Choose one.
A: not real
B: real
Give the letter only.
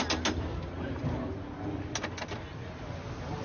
B